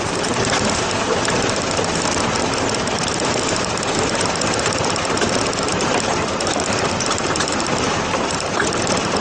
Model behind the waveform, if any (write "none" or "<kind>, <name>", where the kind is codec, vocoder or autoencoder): vocoder, BigVGAN v2